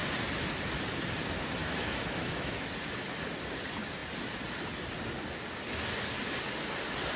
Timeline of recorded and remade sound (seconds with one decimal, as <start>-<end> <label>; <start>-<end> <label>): 0.0-1.6 recorded; 1.6-2.7 remade; 2.7-7.2 recorded